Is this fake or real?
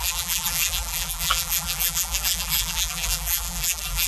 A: fake